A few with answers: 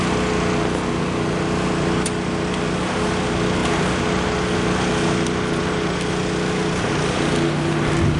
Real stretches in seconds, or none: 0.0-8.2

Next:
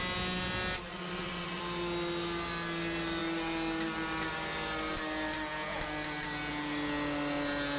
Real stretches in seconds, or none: 0.0-0.9; 1.6-7.8

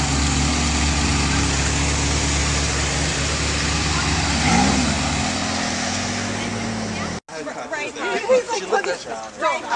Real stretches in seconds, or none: 0.0-9.8